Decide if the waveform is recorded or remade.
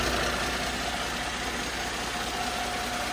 recorded